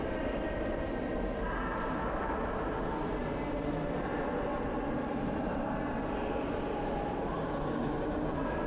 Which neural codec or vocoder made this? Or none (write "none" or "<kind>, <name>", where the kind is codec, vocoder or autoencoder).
none